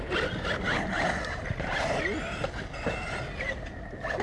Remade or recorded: recorded